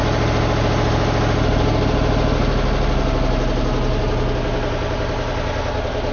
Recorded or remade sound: recorded